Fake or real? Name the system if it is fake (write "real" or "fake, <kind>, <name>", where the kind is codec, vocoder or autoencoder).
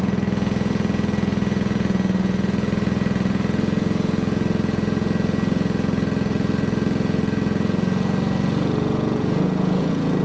fake, vocoder, Vocos